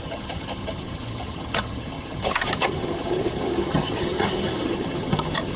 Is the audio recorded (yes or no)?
no